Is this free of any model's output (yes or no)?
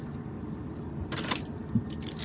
yes